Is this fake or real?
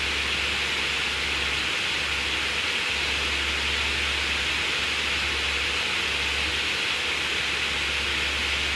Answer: real